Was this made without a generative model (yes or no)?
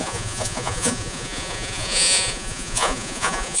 no